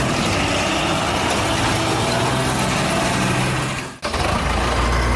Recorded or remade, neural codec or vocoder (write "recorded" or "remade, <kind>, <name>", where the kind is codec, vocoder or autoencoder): recorded